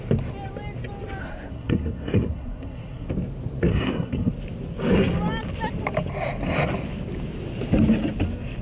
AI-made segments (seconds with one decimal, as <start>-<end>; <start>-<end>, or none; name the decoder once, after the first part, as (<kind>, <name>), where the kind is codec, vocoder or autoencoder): 1.2-3.1 (codec, SNAC); 3.7-4.3